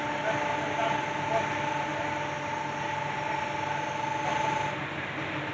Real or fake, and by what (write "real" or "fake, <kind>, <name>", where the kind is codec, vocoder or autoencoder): real